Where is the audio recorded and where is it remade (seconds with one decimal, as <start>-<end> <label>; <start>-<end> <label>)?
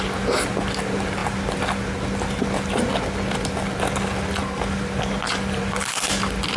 0.0-6.6 recorded